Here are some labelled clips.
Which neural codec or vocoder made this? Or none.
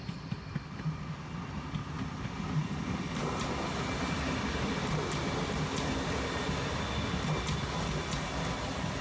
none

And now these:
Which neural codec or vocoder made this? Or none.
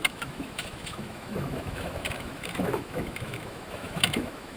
autoencoder, DAC-VAE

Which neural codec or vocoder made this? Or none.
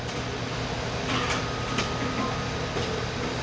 none